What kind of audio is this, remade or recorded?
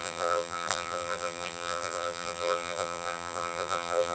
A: remade